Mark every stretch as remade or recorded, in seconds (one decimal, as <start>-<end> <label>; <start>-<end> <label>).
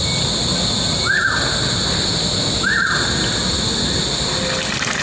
0.0-5.0 recorded